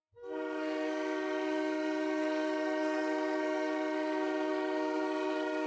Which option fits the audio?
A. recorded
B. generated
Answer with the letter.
B